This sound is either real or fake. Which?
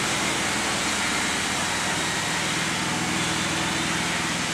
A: real